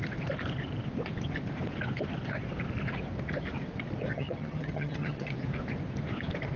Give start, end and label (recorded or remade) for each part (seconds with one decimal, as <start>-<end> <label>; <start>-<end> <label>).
0.0-4.1 recorded; 4.1-5.3 remade; 5.3-6.6 recorded